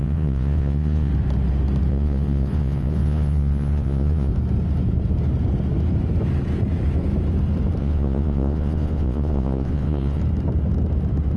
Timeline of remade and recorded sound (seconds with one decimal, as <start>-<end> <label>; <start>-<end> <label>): 0.0-1.1 remade; 1.1-1.9 recorded; 1.9-4.3 remade; 4.3-7.8 recorded; 7.8-10.2 remade; 10.2-11.4 recorded